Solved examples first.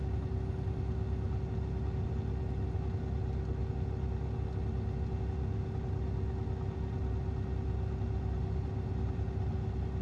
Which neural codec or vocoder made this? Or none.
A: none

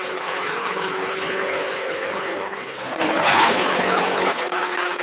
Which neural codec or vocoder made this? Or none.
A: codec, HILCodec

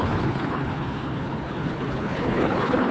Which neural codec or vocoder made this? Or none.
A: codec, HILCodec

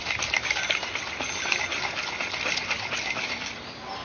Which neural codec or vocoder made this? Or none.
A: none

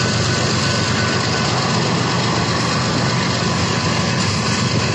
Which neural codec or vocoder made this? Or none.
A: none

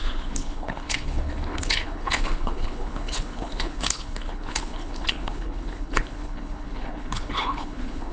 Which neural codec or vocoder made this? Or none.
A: codec, HILCodec